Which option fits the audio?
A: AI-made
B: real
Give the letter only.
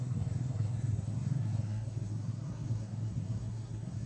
A